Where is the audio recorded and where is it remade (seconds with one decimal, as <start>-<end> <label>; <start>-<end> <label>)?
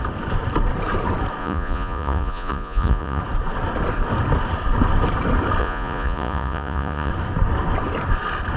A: 0.0-1.4 recorded; 1.4-3.2 remade; 3.2-5.6 recorded; 5.6-7.1 remade; 7.1-8.6 recorded